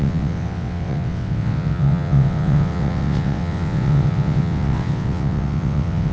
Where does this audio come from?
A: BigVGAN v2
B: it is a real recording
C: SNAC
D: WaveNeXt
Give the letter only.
D